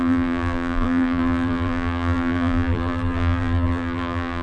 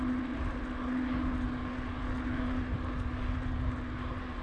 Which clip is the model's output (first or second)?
first